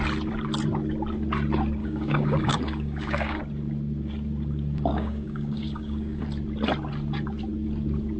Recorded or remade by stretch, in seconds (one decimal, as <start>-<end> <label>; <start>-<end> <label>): 0.0-1.8 recorded; 1.8-3.4 remade; 3.4-4.9 recorded; 4.9-6.2 remade; 6.2-8.2 recorded